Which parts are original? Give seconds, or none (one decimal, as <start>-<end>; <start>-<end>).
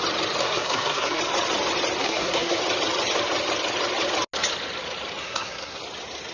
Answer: 0.0-0.4; 1.2-2.0; 2.6-5.2; 5.8-6.3